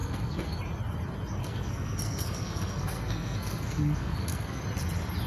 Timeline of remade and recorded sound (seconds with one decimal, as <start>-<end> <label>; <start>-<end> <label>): 0.0-0.6 remade; 0.6-1.4 recorded; 1.4-4.6 remade; 4.6-5.3 recorded